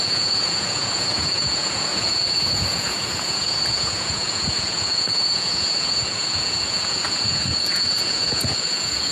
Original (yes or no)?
no